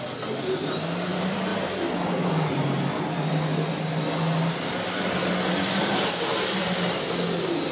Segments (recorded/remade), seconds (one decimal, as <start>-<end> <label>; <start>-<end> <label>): 0.0-7.7 recorded